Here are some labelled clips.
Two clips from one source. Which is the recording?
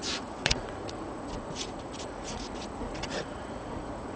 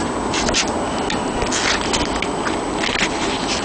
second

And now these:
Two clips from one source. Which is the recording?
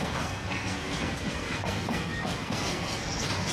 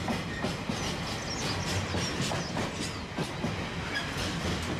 second